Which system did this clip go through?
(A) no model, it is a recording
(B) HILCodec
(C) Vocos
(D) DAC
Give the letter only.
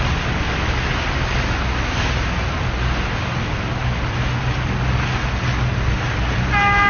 A